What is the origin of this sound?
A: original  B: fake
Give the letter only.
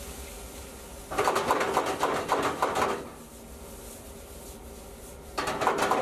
A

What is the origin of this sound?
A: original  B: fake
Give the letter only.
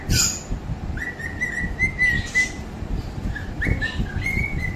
A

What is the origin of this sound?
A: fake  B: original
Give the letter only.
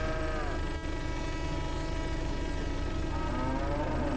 B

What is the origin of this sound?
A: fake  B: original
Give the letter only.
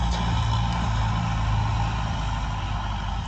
B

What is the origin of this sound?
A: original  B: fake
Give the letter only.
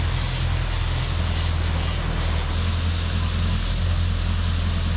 A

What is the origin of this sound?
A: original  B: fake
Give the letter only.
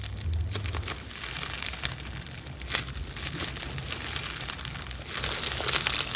A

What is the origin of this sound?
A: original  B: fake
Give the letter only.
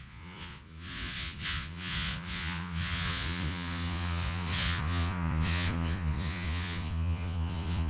B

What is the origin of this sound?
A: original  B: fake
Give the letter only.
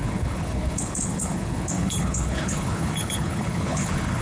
B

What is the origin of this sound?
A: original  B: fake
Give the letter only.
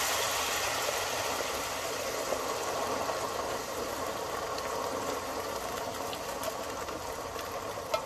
A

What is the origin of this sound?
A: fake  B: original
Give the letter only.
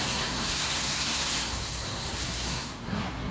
A